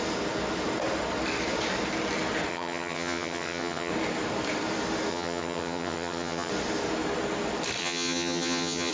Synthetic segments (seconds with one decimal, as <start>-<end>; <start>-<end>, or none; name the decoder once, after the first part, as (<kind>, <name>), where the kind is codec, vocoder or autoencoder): 2.5-3.9 (vocoder, HiFi-GAN); 5.1-6.5; 7.8-8.9